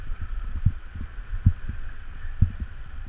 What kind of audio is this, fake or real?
real